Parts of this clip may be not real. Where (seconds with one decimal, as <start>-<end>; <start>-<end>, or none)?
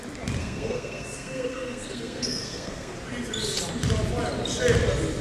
0.4-2.9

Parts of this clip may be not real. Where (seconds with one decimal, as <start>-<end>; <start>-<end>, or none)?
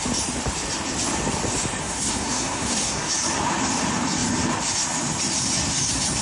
1.8-3.1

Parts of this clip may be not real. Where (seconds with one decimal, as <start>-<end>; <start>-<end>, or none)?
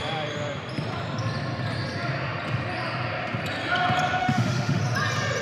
4.2-4.8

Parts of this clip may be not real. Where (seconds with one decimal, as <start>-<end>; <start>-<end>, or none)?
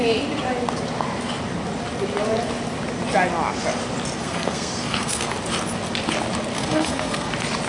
4.2-5.3; 6.5-7.3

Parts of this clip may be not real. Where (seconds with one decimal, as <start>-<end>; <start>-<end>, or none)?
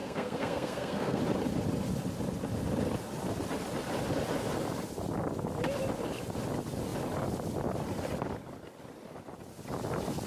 0.0-1.2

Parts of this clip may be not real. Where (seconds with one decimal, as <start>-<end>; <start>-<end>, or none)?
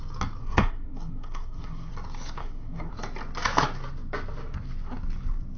0.4-1.9; 2.4-2.9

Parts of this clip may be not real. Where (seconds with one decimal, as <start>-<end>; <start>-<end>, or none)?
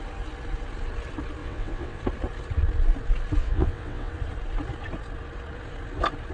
1.4-2.0; 3.4-4.1